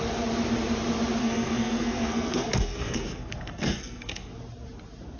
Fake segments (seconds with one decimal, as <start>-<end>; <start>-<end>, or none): 1.2-4.3